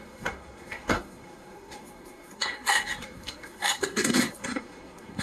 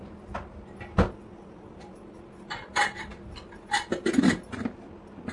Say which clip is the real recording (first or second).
second